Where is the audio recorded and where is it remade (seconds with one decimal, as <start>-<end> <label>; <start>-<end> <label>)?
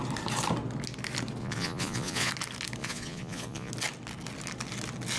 0.0-1.4 recorded; 1.4-2.3 remade; 2.3-2.8 recorded; 2.8-3.7 remade; 3.7-5.2 recorded